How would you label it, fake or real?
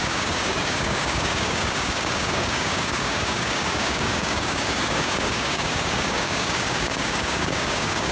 fake